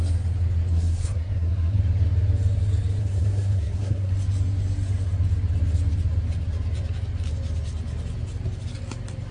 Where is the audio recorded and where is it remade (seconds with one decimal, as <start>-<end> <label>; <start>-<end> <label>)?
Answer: 0.0-0.7 recorded; 0.7-1.8 remade; 1.8-3.0 recorded; 3.0-4.1 remade; 4.1-9.3 recorded